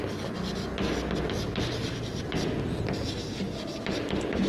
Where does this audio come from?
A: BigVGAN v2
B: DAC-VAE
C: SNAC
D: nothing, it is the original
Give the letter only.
D